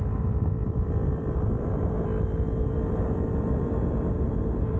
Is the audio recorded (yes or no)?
no